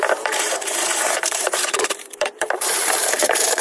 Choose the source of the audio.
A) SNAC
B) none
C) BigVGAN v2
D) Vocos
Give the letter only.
C